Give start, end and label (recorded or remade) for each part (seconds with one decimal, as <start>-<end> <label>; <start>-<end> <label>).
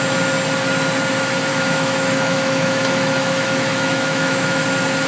0.0-1.5 recorded; 1.5-4.6 remade; 4.6-5.1 recorded